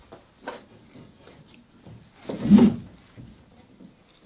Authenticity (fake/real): real